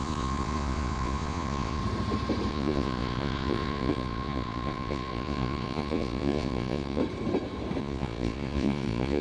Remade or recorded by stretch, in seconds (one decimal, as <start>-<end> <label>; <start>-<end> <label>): 0.0-1.8 remade; 1.8-2.5 recorded; 2.5-7.0 remade; 7.0-7.8 recorded; 7.8-9.2 remade